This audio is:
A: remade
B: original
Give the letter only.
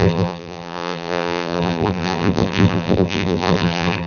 A